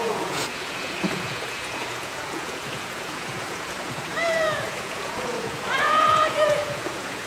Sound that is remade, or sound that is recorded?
remade